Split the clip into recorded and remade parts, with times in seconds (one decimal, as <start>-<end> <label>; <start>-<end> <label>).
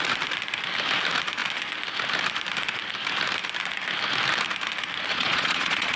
0.0-5.1 recorded; 5.1-6.0 remade